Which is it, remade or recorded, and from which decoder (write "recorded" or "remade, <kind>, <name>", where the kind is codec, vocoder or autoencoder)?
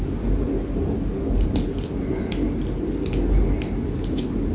recorded